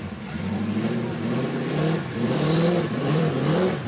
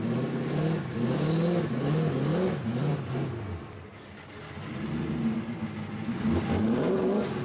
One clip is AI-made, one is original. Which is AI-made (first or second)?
first